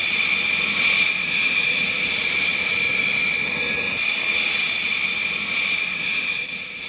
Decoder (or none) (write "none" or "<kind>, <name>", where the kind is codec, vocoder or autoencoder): none